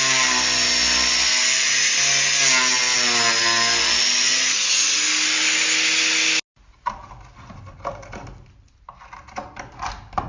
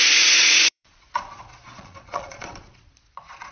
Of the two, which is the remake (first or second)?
second